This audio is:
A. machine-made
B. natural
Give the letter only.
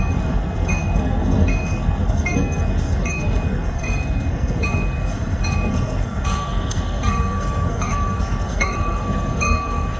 A